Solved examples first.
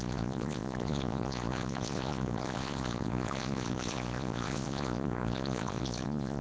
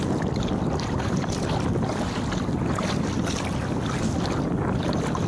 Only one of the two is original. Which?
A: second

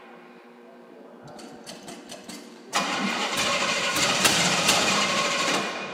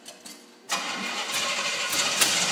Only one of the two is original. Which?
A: second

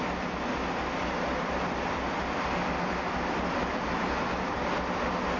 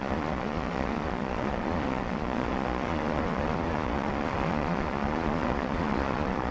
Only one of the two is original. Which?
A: first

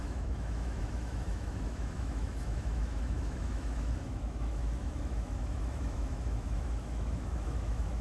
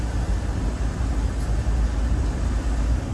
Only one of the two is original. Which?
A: second